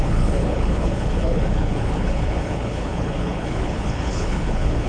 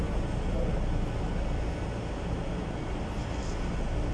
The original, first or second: second